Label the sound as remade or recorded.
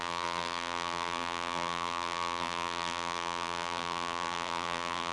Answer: remade